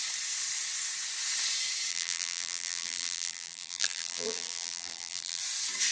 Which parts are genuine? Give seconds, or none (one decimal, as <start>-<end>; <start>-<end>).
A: 0.0-1.9; 5.4-5.9